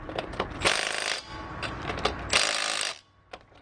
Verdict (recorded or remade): recorded